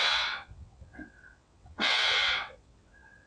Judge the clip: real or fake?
fake